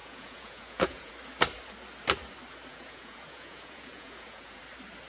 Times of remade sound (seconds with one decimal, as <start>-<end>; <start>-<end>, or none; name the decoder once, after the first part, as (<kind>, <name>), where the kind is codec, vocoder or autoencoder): 0.0-1.1 (vocoder, Vocos); 2.7-4.6